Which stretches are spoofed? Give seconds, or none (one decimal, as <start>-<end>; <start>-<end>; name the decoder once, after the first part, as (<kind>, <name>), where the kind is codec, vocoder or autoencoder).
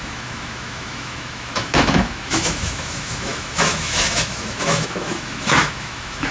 0.0-6.3 (autoencoder, DAC-VAE)